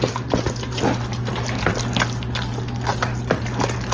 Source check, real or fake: real